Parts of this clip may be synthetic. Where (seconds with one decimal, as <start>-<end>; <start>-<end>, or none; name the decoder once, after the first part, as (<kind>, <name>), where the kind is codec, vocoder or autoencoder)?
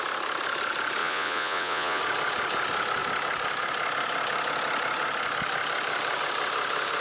1.0-2.0 (vocoder, Vocos)